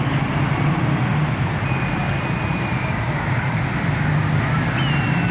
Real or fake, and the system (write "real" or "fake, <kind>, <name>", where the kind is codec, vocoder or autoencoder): real